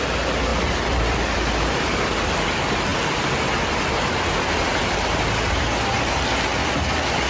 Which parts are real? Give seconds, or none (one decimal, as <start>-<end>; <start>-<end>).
0.0-0.5; 2.4-6.6